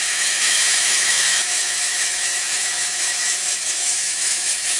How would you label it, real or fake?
fake